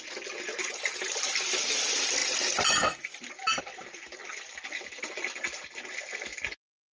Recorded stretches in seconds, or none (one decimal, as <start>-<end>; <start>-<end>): 0.0-6.9